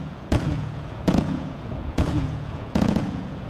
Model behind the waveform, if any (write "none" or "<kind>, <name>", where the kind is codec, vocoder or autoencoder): vocoder, Vocos